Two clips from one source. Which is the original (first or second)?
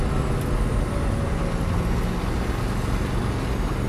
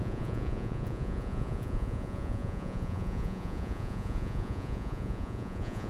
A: first